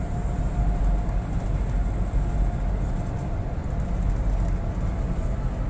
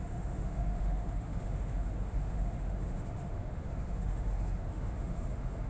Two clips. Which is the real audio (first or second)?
first